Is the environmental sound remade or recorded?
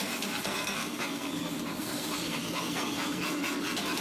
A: remade